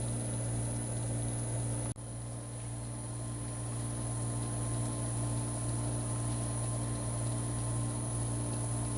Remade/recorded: recorded